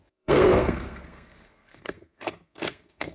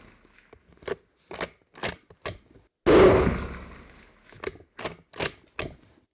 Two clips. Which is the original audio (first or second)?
second